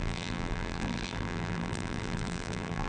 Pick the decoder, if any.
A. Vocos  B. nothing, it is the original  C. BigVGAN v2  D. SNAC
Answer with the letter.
C